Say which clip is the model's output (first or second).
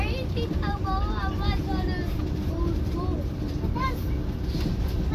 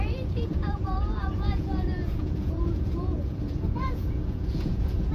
second